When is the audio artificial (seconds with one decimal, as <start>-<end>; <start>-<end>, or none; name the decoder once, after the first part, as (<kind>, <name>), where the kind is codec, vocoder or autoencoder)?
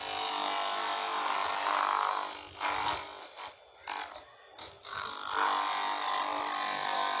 4.6-5.1 (codec, DAC)